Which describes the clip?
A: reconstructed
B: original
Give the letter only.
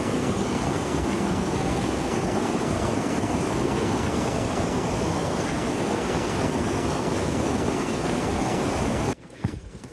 A